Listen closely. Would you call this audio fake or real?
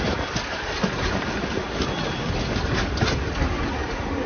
real